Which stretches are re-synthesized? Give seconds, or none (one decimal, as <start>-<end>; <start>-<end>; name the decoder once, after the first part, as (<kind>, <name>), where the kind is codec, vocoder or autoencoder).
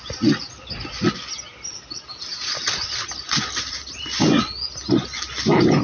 none